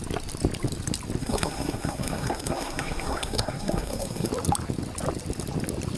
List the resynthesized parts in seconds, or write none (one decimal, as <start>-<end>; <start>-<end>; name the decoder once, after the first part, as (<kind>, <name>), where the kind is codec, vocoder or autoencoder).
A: 1.2-4.3 (codec, SNAC)